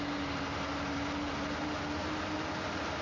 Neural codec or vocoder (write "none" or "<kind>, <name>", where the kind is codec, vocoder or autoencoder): none